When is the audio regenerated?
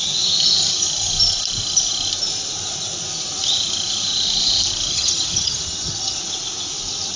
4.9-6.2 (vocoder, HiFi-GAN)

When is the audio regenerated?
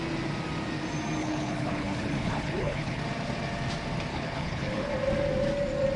1.2-3.0 (codec, HILCodec); 4.1-4.9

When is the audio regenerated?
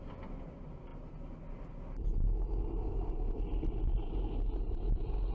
none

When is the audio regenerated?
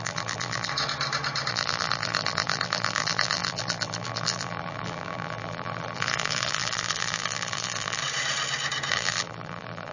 0.0-0.7 (vocoder, BigVGAN v2); 1.5-8.0; 8.9-9.9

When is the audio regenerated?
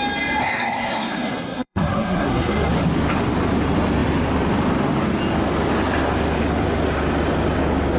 0.4-2.7 (codec, SNAC)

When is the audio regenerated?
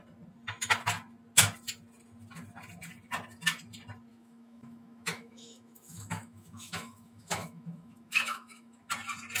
4.1-8.9 (autoencoder, DAC-VAE)